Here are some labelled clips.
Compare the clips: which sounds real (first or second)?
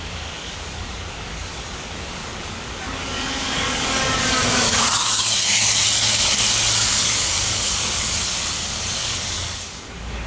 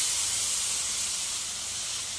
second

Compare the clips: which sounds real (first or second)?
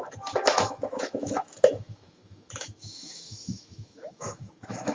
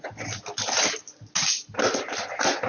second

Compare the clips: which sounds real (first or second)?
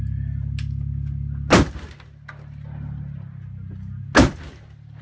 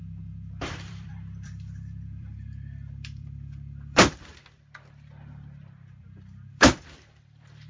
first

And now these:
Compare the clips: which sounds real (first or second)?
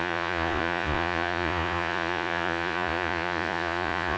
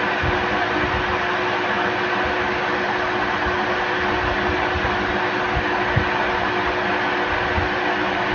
second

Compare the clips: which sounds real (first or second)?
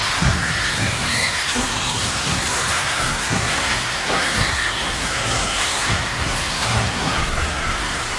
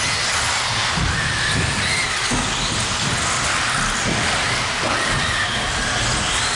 second